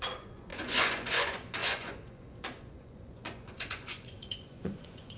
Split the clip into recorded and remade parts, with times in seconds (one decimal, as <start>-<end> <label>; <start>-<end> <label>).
0.0-5.2 remade